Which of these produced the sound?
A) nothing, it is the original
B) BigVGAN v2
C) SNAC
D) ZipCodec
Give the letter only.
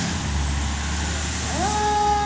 A